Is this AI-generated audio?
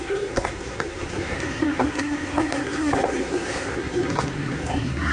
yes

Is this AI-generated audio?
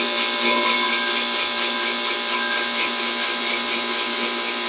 no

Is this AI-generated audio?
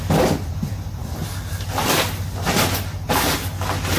no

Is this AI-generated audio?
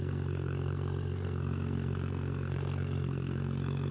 yes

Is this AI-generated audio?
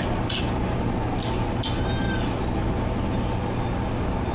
no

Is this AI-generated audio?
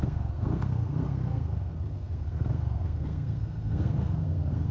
yes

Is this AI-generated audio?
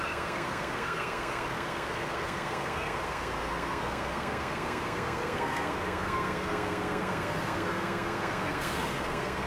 yes